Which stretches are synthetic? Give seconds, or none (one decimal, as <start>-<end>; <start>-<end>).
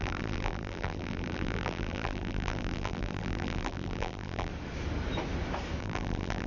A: 0.0-4.5; 5.8-6.5